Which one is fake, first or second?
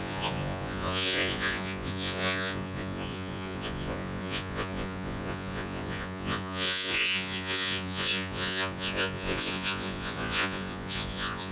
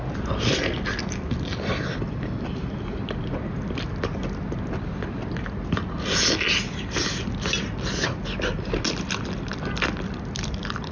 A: first